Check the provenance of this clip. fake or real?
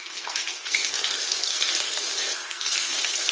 fake